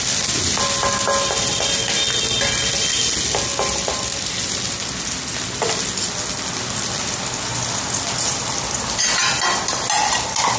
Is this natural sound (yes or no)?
yes